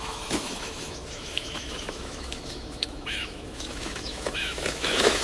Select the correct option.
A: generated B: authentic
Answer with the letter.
A